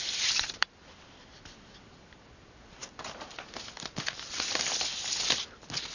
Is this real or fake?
real